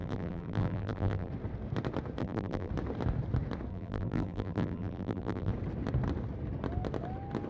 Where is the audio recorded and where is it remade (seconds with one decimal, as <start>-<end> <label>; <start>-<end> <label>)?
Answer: 0.0-1.3 remade; 1.3-2.2 recorded; 2.2-2.7 remade; 2.7-3.7 recorded; 3.7-5.5 remade; 5.5-7.5 recorded